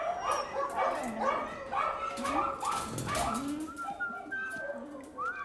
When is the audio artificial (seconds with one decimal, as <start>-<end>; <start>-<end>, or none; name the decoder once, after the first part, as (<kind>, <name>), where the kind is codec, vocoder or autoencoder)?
none